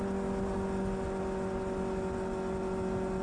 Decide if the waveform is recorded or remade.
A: recorded